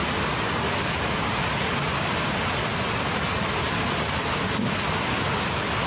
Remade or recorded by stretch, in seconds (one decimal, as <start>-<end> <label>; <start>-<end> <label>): 0.0-5.9 recorded